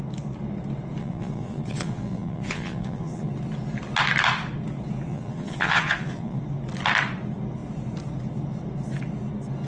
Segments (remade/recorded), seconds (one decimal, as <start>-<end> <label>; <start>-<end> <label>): 0.0-1.0 recorded; 1.0-3.3 remade; 3.3-5.1 recorded; 5.1-6.4 remade; 6.4-9.7 recorded